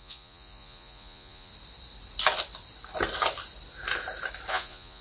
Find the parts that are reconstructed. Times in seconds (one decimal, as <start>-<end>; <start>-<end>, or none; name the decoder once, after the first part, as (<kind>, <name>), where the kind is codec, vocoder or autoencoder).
0.0-1.5 (vocoder, Vocos); 4.5-5.0